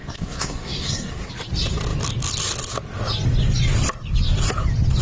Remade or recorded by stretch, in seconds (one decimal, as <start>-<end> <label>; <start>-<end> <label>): 0.0-1.3 remade; 1.3-5.0 recorded